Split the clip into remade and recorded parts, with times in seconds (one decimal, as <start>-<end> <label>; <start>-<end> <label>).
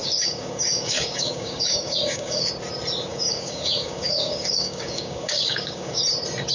0.0-2.5 remade; 2.5-3.1 recorded; 3.1-6.0 remade; 6.0-6.5 recorded